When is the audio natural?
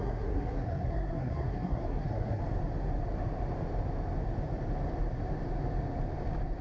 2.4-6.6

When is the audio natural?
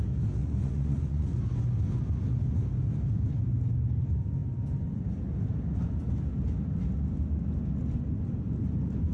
0.0-0.4; 1.4-9.1